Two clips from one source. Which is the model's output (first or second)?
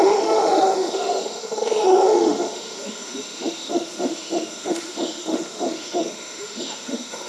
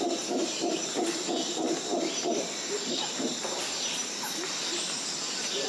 first